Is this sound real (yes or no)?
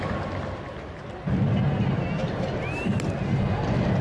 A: yes